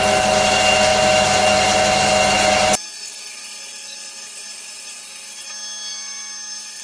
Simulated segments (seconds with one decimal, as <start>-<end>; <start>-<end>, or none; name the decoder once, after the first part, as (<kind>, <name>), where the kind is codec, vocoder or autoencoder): 5.9-6.8 (vocoder, BigVGAN v2)